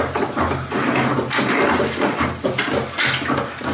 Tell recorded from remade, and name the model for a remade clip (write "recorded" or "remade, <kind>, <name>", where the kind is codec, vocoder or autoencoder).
recorded